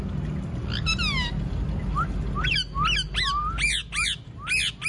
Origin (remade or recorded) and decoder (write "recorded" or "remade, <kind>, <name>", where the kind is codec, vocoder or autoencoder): recorded